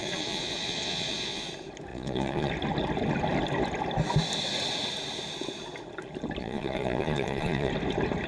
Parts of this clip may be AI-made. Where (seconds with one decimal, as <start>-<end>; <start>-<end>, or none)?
0.0-1.5; 1.9-2.5; 6.4-7.7